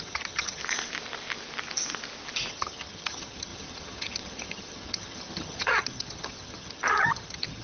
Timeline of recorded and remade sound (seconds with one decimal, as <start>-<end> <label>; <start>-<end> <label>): 0.0-0.6 remade; 0.6-2.5 recorded; 2.5-7.6 remade